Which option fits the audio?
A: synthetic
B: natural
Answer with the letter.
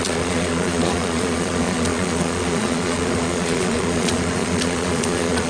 A